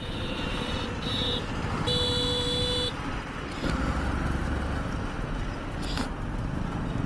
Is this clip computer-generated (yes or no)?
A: no